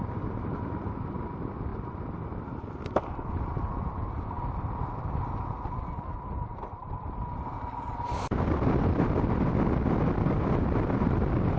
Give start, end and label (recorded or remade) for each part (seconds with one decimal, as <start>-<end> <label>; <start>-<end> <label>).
0.0-11.6 recorded